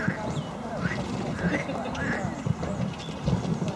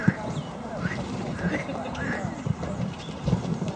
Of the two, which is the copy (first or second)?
second